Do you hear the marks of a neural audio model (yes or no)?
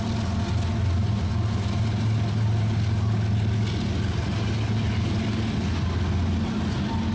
no